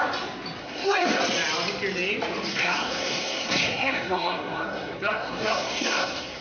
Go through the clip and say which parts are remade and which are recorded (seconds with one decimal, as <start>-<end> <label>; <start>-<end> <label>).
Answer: 0.0-0.6 recorded; 0.6-1.2 remade; 1.2-2.5 recorded; 2.5-6.4 remade